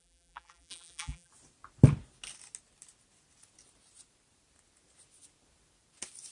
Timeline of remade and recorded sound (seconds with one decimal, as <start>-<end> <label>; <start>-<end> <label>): 0.0-1.3 remade; 1.3-6.3 recorded